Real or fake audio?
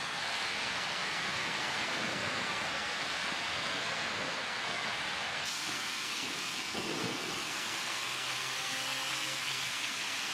fake